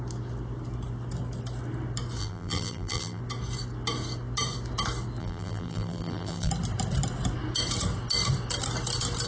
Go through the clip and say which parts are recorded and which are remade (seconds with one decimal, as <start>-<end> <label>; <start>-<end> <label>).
0.0-2.2 recorded; 2.2-3.2 remade; 3.2-5.2 recorded; 5.2-6.5 remade; 6.5-9.3 recorded